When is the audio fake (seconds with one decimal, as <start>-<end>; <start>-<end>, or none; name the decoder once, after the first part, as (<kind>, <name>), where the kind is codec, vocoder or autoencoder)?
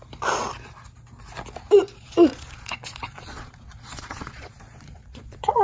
1.8-5.6 (vocoder, Vocos)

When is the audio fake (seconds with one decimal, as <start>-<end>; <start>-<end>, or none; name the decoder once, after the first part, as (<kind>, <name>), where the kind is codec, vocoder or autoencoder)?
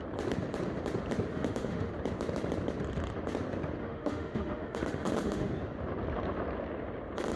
1.3-1.9 (autoencoder, DAC-VAE); 3.8-5.5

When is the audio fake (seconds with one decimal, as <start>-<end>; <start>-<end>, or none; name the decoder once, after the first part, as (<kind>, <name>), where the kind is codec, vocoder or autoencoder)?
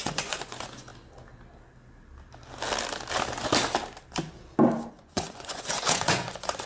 0.0-0.9 (vocoder, Vocos); 4.9-6.7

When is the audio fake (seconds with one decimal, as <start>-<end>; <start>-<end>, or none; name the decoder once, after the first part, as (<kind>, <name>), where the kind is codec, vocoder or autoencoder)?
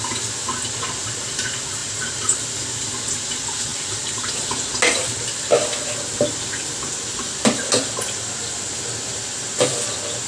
1.8-2.4 (vocoder, BigVGAN v2); 3.7-4.3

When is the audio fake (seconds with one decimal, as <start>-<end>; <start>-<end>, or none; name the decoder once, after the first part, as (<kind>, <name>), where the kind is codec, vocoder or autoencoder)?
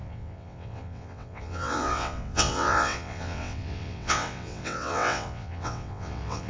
0.0-6.5 (vocoder, WaveNeXt)